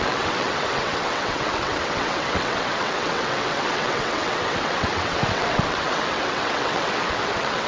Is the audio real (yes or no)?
no